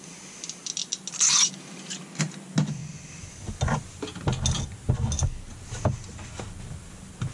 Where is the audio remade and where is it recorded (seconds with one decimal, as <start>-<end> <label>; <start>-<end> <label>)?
0.0-7.3 recorded